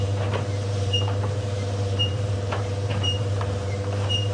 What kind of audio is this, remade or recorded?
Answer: remade